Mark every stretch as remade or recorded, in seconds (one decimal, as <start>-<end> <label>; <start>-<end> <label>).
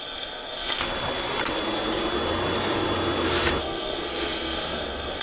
0.0-0.8 remade; 0.8-3.6 recorded; 3.6-5.2 remade